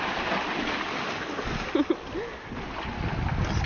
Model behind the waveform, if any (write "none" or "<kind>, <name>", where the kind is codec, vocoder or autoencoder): none